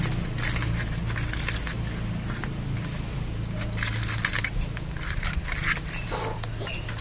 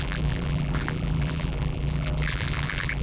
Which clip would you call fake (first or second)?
second